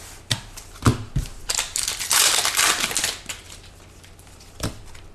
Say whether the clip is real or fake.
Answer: real